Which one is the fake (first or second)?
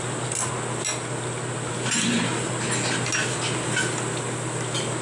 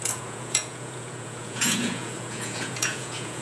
second